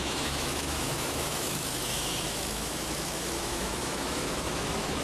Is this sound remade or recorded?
remade